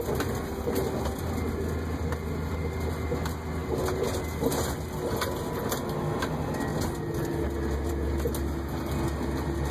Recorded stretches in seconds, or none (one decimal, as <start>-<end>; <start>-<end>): 0.0-9.7